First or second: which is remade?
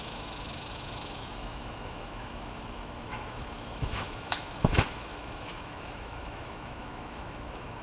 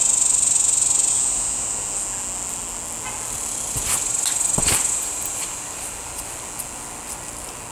first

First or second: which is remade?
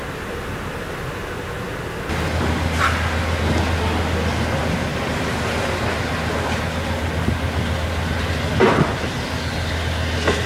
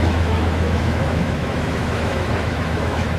second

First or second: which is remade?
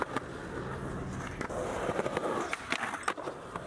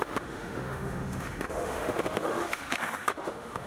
second